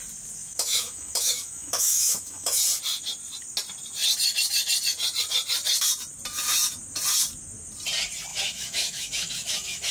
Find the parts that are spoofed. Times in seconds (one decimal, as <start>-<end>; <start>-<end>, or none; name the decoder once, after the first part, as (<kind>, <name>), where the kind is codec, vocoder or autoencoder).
0.4-2.6 (autoencoder, DAC-VAE); 8.3-9.9